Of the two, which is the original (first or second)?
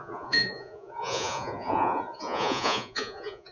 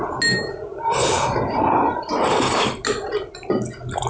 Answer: second